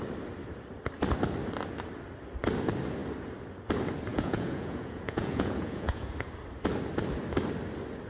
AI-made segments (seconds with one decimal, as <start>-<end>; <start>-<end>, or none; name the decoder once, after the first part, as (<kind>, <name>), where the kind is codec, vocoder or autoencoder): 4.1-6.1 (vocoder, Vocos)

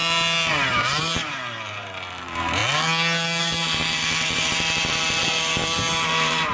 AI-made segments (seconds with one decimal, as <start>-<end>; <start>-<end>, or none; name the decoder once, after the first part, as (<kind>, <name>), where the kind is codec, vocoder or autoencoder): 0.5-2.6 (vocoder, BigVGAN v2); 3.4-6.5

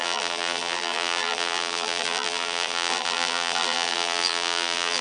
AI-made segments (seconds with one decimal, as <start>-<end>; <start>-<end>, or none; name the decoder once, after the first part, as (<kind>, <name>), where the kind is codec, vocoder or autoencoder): 0.0-5.0 (vocoder, BigVGAN v2)

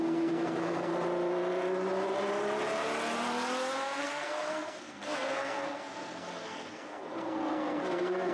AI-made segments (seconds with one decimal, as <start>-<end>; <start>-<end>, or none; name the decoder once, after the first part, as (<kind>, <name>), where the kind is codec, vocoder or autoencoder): 0.0-0.9 (codec, SNAC); 4.0-8.3

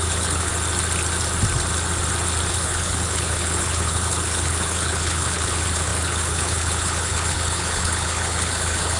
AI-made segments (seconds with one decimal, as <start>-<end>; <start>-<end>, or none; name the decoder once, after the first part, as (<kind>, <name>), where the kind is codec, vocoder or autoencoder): 0.0-0.5 (codec, HILCodec); 2.5-9.0

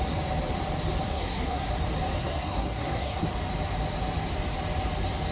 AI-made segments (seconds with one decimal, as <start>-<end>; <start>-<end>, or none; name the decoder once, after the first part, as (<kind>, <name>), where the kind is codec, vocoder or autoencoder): 1.1-1.7 (codec, SNAC); 2.2-3.2

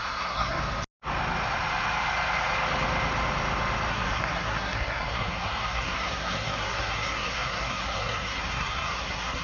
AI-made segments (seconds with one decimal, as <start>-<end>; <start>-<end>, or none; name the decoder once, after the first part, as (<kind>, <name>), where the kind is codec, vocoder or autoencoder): 0.0-0.6 (codec, SNAC); 3.9-9.4

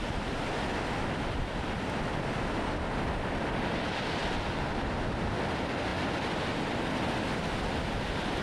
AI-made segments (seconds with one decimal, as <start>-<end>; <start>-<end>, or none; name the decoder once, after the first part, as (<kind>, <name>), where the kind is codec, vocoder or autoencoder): none